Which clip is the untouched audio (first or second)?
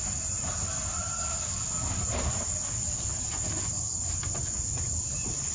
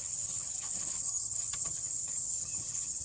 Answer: first